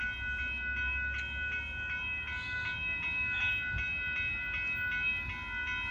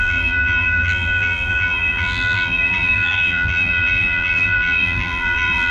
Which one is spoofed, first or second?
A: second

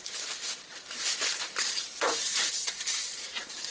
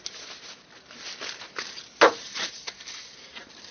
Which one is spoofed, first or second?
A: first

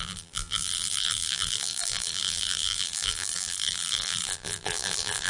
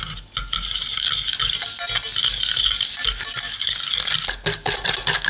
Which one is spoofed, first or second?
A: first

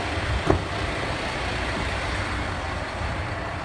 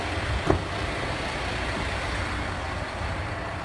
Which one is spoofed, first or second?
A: first